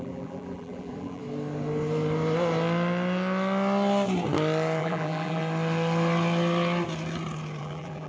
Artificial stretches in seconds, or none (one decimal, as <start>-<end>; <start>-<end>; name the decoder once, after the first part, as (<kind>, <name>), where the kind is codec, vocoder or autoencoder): 0.0-1.2 (vocoder, BigVGAN v2); 4.8-5.4; 7.6-8.1